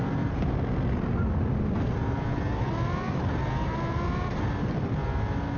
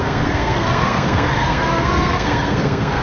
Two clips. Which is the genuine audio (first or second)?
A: first